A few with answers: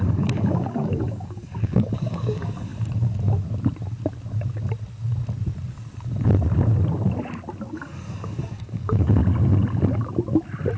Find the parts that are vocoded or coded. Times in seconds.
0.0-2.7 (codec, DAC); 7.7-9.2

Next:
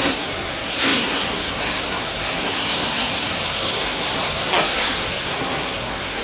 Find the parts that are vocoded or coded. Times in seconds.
0.0-6.2 (codec, SNAC)